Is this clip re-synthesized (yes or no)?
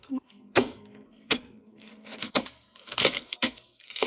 yes